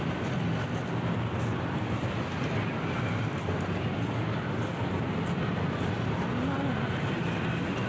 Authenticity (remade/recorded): recorded